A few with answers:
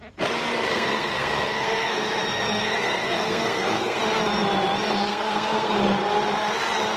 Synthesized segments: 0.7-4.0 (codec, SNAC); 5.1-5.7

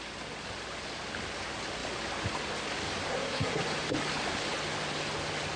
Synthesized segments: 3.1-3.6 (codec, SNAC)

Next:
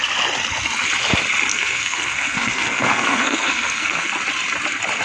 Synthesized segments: 1.5-4.1 (codec, SNAC)